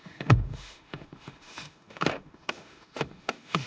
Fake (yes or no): yes